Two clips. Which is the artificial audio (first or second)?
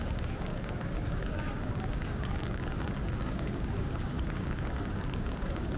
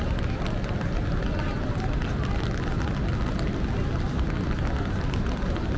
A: first